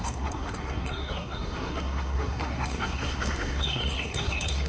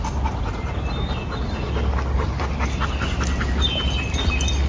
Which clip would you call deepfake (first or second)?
first